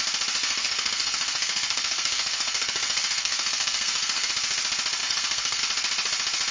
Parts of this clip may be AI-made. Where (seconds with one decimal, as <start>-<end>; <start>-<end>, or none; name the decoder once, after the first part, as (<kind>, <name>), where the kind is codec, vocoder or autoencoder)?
0.4-4.3 (codec, SNAC); 5.0-5.6